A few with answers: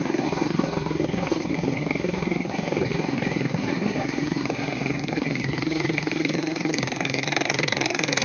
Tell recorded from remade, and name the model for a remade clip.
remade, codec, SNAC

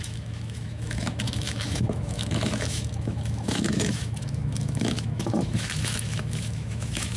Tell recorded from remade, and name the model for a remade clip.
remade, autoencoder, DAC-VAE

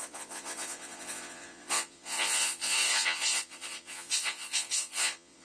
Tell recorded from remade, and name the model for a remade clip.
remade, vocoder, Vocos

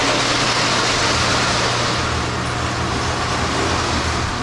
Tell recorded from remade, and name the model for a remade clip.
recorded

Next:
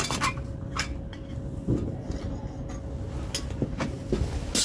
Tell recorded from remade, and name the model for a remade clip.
recorded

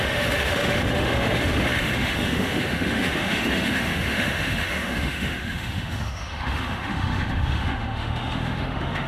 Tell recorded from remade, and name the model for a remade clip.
remade, autoencoder, DAC-VAE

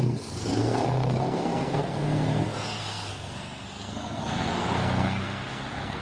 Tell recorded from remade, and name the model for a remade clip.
remade, codec, SNAC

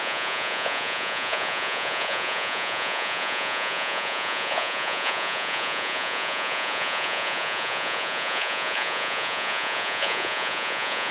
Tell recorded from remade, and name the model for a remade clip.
remade, vocoder, Vocos